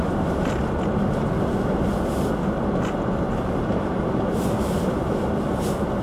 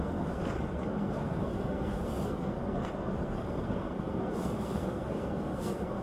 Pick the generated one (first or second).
second